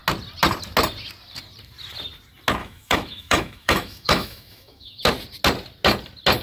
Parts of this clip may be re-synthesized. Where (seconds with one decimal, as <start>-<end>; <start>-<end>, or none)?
2.6-5.0